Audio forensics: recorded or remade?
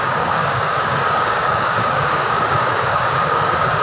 remade